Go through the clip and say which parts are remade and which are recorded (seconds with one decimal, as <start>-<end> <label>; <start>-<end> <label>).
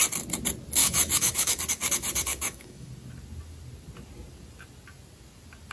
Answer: 0.0-0.8 recorded; 0.8-1.6 remade; 1.6-2.3 recorded; 2.3-2.9 remade; 2.9-5.7 recorded